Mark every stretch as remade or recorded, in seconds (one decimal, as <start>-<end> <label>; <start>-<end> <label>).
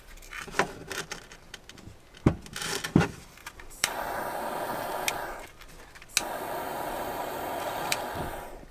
0.0-0.8 recorded; 0.8-1.6 remade; 1.6-2.5 recorded; 2.5-4.2 remade; 4.2-6.7 recorded; 6.7-8.2 remade; 8.2-8.7 recorded